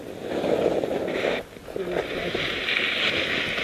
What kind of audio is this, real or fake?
real